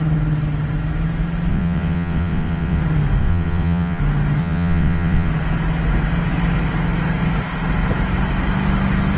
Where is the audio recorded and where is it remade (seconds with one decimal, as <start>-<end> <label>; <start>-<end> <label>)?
0.0-1.5 recorded; 1.5-2.8 remade; 2.8-3.2 recorded; 3.2-4.0 remade; 4.0-4.4 recorded; 4.4-5.3 remade; 5.3-9.2 recorded